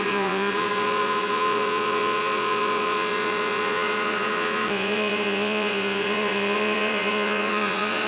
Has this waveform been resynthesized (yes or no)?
yes